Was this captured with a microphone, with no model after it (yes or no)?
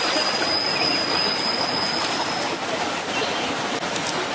yes